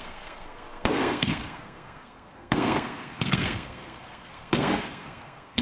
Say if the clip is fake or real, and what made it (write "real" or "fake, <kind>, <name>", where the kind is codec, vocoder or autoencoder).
fake, codec, SNAC